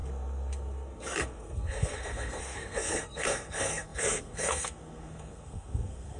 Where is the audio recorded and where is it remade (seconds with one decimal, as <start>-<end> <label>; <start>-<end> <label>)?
0.0-6.2 remade